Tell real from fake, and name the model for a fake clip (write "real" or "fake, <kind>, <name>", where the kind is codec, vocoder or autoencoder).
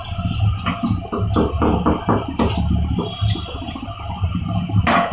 real